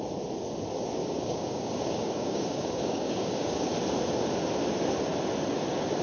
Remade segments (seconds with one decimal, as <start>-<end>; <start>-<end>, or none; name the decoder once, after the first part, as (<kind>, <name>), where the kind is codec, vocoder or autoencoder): 1.0-3.7 (codec, DAC)

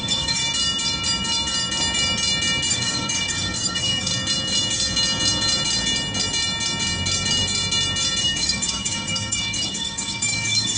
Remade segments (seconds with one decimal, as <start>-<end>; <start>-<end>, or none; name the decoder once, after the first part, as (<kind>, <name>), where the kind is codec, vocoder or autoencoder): 0.0-0.4 (codec, DAC); 2.7-4.1; 8.2-10.8

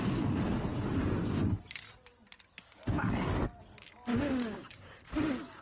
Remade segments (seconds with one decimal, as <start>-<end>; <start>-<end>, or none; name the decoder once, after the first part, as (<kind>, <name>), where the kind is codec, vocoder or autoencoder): 4.1-5.0 (codec, DAC)

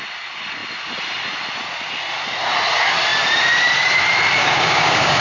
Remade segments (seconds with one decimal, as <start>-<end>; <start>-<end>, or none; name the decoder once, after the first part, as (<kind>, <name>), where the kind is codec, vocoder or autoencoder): 4.4-5.2 (codec, DAC)

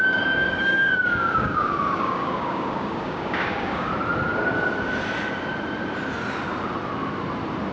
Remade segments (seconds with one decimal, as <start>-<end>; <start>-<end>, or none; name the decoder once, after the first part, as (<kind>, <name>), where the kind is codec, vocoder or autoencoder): 0.0-3.9 (codec, DAC)

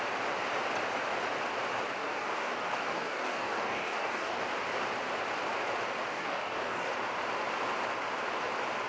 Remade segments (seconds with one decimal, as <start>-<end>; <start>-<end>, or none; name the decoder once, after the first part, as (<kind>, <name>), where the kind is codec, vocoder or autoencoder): 2.0-4.4 (codec, DAC); 6.1-6.9

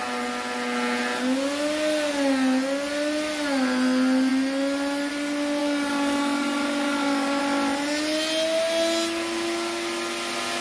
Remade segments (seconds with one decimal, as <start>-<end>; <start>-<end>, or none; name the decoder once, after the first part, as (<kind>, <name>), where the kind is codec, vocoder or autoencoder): 5.6-7.4 (codec, DAC)

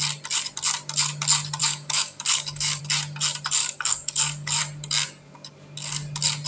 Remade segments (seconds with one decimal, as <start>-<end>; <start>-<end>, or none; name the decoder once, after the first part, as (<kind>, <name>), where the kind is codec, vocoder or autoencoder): 1.6-2.8 (codec, DAC); 3.6-4.6